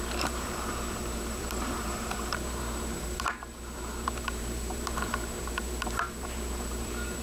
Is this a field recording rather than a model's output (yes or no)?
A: no